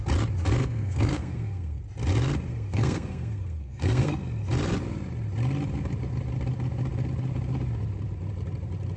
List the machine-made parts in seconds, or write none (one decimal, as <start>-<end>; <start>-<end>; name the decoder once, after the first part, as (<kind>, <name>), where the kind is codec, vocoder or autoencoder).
0.6-1.8 (codec, SNAC); 2.5-4.2